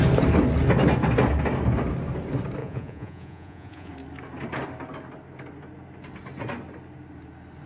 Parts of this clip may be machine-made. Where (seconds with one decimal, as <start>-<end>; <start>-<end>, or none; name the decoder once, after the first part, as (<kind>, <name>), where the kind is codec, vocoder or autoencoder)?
2.6-3.9 (vocoder, Vocos)